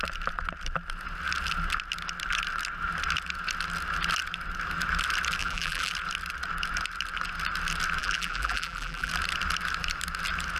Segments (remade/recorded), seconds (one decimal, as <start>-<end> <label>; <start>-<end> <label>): 0.0-5.4 recorded; 5.4-5.9 remade; 5.9-8.0 recorded; 8.0-9.1 remade; 9.1-10.6 recorded